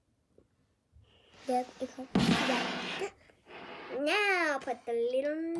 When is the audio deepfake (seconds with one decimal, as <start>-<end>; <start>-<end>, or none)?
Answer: none